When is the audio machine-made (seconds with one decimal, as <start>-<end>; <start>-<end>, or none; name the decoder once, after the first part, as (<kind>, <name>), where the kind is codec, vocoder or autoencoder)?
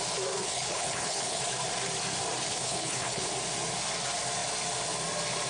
0.4-1.4 (codec, HILCodec); 2.6-3.3